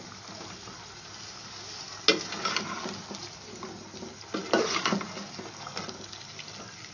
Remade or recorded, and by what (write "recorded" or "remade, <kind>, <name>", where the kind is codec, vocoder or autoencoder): recorded